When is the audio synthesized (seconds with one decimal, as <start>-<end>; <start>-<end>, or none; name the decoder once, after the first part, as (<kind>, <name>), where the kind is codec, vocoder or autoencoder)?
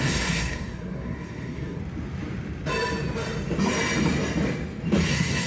0.0-1.8 (codec, SNAC); 5.1-5.5